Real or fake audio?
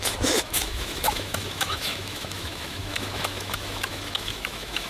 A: fake